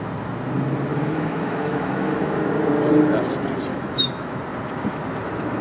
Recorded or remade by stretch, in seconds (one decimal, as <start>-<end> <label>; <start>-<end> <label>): 0.0-0.9 recorded; 0.9-2.5 remade; 2.5-3.7 recorded; 3.7-4.4 remade; 4.4-5.6 recorded